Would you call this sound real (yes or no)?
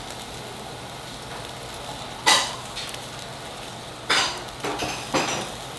yes